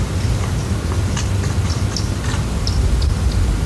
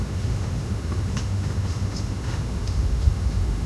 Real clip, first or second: first